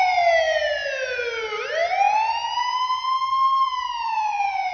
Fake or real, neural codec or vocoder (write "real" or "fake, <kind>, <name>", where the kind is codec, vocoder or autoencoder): real